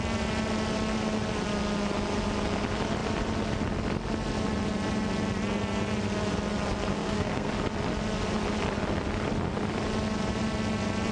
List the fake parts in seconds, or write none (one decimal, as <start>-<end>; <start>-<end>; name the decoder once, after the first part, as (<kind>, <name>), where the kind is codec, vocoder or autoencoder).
6.9-7.5 (codec, SNAC)